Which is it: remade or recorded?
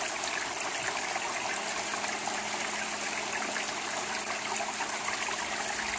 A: recorded